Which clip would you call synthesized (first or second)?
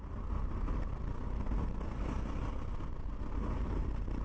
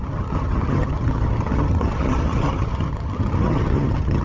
second